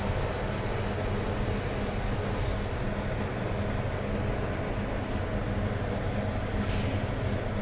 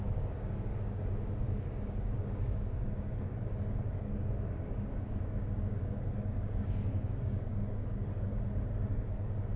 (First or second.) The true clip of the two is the first